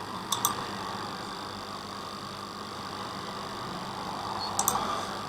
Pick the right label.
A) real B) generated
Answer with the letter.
A